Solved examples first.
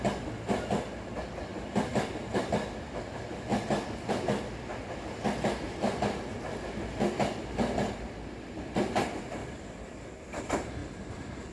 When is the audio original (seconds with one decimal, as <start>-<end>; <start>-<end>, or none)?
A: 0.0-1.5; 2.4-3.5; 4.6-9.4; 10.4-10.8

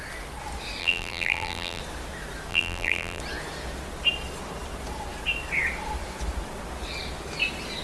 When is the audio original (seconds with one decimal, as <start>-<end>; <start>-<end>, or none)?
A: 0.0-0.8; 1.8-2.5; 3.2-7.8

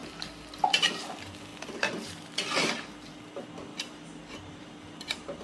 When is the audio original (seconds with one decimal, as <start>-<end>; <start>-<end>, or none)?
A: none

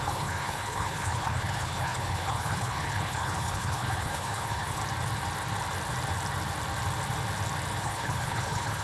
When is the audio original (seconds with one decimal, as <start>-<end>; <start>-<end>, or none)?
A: 4.8-7.8